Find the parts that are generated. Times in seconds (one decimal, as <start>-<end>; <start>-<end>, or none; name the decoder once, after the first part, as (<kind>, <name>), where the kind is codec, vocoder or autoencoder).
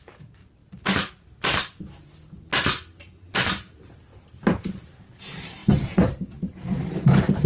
0.0-0.6 (vocoder, BigVGAN v2); 3.3-7.5